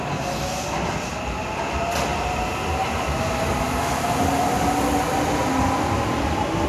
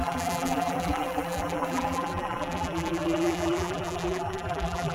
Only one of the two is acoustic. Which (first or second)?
first